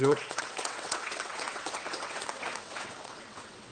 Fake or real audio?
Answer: fake